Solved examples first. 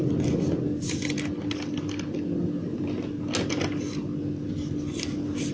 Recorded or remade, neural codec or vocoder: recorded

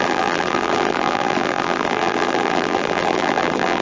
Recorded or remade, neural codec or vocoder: remade, vocoder, BigVGAN v2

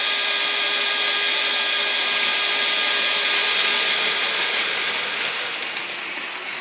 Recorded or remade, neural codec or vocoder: recorded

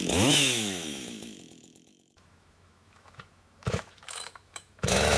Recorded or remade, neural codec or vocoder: remade, autoencoder, DAC-VAE